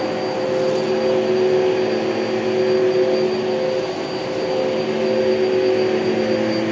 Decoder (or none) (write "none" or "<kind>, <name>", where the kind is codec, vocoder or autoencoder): none